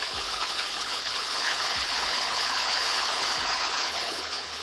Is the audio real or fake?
fake